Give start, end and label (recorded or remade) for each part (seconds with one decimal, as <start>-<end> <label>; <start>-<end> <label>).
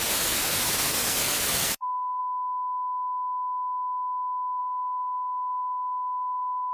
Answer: 0.0-2.2 remade; 2.2-4.6 recorded; 4.6-6.7 remade